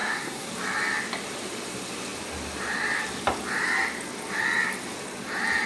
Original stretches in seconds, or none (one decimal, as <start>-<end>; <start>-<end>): 0.5-5.7